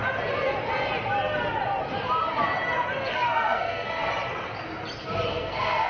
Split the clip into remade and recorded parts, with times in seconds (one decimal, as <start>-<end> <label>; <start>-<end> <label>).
0.0-3.0 recorded; 3.0-3.9 remade; 3.9-5.3 recorded; 5.3-5.9 remade